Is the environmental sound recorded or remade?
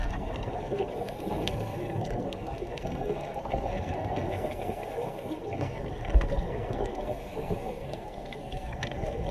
remade